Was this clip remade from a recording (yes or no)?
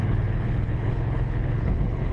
yes